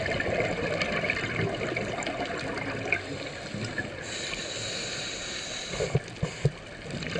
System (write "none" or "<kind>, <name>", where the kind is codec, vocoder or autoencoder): none